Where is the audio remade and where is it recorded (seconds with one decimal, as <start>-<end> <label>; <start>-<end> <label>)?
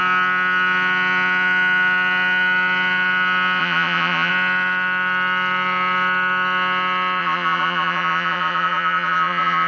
0.0-3.6 recorded; 3.6-4.3 remade; 4.3-7.2 recorded; 7.2-9.7 remade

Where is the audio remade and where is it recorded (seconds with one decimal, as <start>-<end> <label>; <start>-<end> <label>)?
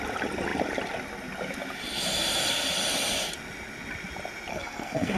0.0-4.5 recorded; 4.5-5.2 remade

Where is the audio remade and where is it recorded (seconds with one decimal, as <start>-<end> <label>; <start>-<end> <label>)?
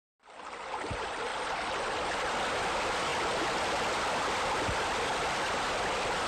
0.0-1.3 recorded; 1.3-2.3 remade; 2.3-6.3 recorded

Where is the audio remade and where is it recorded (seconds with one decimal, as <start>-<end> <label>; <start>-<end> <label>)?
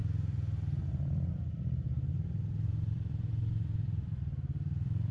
0.0-5.1 remade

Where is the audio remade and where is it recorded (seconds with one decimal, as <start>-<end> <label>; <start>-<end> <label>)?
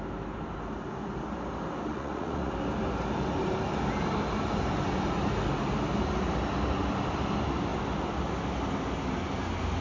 0.0-1.9 recorded; 1.9-2.5 remade; 2.5-9.8 recorded